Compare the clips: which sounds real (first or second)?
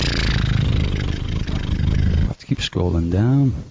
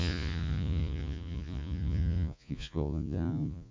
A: first